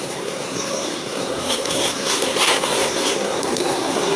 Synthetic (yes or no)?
yes